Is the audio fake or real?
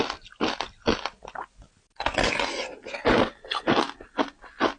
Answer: real